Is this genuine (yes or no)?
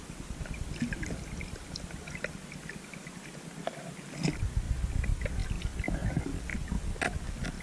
yes